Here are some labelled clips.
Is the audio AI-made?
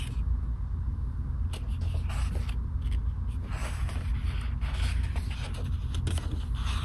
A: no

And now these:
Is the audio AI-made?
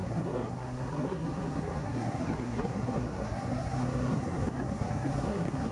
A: yes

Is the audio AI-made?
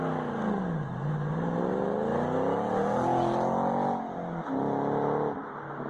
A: no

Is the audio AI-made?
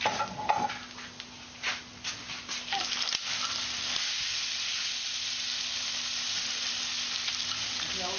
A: no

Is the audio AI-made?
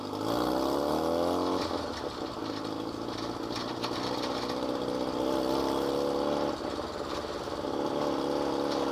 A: no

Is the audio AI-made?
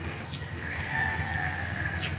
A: yes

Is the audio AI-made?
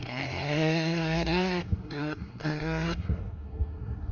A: yes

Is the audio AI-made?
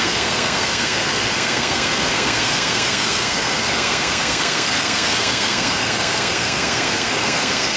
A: yes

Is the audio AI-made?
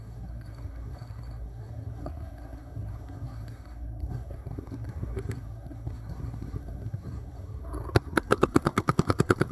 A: yes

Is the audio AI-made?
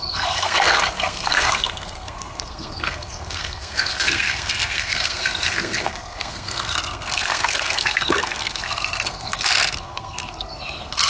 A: yes